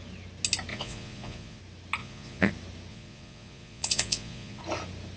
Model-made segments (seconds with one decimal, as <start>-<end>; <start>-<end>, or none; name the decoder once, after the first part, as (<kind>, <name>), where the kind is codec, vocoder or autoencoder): 0.7-1.6 (vocoder, Vocos); 2.0-2.5; 2.9-4.6